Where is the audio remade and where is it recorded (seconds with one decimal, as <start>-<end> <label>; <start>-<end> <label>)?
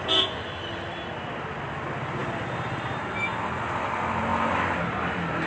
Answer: 0.0-5.5 recorded